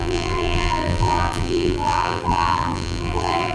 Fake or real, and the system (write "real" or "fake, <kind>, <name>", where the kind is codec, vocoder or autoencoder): fake, vocoder, BigVGAN v2